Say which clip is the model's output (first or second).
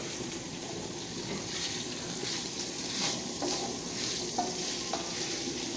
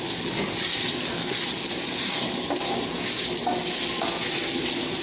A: first